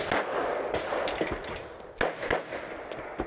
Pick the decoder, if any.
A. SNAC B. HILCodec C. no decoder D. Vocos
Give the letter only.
C